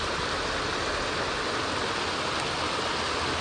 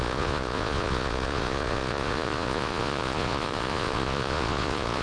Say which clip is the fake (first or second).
second